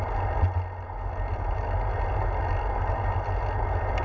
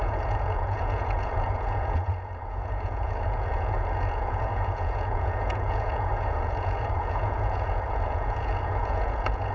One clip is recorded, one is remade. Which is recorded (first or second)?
first